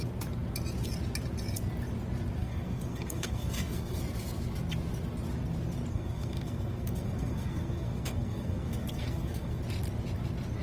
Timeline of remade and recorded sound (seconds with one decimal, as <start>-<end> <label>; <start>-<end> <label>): 0.0-2.4 recorded; 2.4-4.0 remade; 4.0-5.9 recorded; 5.9-9.6 remade; 9.6-10.6 recorded